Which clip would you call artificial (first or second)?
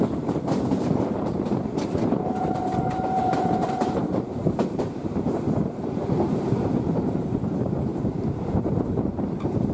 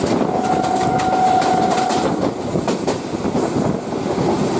first